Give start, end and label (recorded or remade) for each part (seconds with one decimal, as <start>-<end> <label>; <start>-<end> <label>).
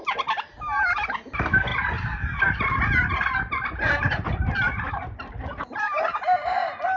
0.0-7.0 recorded